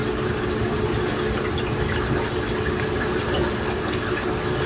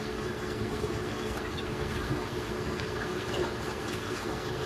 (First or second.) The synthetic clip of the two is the second